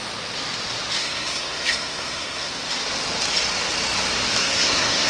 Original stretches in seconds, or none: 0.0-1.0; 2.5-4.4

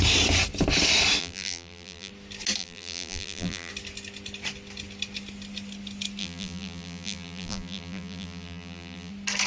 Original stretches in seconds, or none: 0.0-1.2; 2.1-2.6; 3.7-6.2; 9.1-9.5

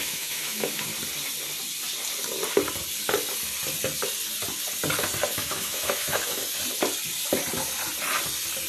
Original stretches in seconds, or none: 0.9-5.3; 6.4-8.7

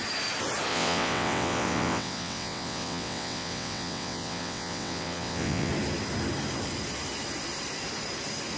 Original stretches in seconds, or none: 0.0-0.7; 5.7-8.6

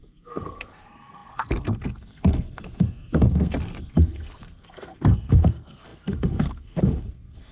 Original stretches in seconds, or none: none